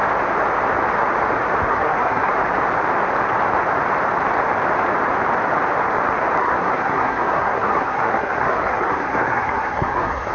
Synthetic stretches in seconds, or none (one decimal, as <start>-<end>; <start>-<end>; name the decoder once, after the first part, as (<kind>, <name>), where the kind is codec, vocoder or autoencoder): 1.7-2.3 (codec, SNAC); 6.4-10.3